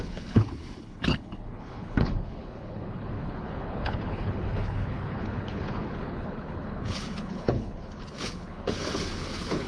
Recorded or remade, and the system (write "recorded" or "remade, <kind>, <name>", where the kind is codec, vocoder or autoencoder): remade, codec, HILCodec